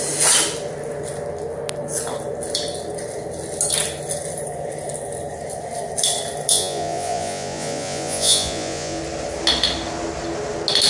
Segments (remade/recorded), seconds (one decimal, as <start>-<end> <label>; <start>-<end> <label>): 0.0-6.5 recorded; 6.5-9.0 remade; 9.0-10.9 recorded